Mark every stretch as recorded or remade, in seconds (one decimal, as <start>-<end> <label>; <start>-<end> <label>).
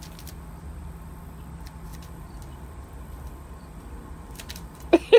0.0-1.9 recorded; 1.9-5.2 remade